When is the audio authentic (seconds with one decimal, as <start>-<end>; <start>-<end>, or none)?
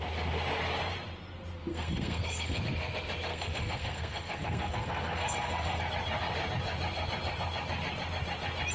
0.0-1.7; 2.6-3.3; 5.8-8.7